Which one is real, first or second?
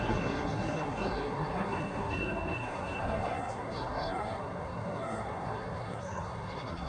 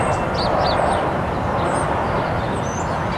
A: second